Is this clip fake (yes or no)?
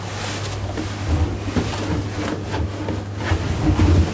no